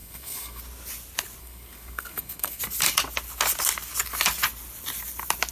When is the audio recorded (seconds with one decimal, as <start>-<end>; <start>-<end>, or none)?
0.6-1.4; 2.6-5.5